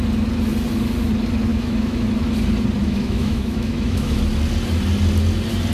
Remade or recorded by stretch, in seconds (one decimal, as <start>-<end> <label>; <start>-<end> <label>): 0.0-1.5 recorded; 1.5-2.1 remade; 2.1-2.8 recorded; 2.8-4.2 remade; 4.2-5.7 recorded